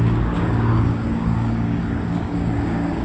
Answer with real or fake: fake